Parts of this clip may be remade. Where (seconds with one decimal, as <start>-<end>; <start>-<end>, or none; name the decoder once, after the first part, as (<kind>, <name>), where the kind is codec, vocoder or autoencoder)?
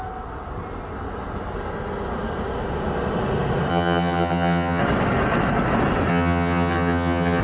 3.7-4.8 (vocoder, HiFi-GAN); 6.1-7.4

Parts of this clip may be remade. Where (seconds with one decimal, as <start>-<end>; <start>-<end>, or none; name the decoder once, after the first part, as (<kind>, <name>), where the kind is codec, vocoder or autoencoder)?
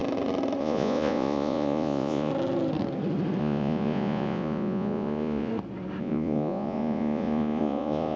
0.6-2.3 (vocoder, Vocos); 3.4-5.5; 6.0-8.2